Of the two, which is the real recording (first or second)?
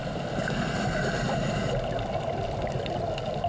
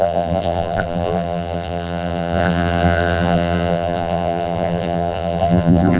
first